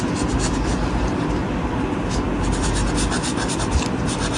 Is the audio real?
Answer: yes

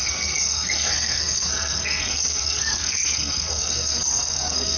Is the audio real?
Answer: no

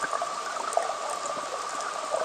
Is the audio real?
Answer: yes